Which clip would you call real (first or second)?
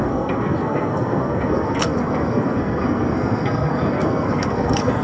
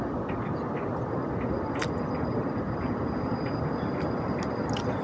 second